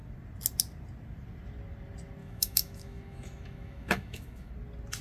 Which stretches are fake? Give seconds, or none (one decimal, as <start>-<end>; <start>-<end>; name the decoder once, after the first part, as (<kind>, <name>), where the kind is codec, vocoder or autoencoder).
2.2-4.5 (autoencoder, DAC-VAE)